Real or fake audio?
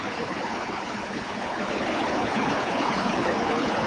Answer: fake